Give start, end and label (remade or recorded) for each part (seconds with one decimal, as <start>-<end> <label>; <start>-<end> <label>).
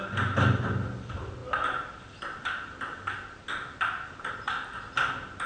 0.0-5.5 recorded